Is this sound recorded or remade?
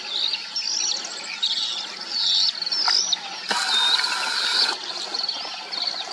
recorded